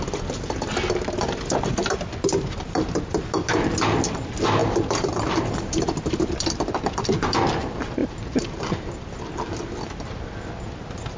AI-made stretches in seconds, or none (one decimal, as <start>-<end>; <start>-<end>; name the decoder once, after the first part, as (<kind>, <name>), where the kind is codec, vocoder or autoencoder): 4.6-6.3 (vocoder, BigVGAN v2); 8.0-9.0